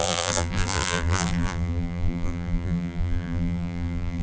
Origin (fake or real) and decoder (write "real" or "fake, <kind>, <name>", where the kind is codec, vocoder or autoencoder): fake, vocoder, BigVGAN v2